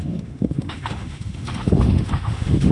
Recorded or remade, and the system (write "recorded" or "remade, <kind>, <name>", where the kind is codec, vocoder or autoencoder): remade, autoencoder, DAC-VAE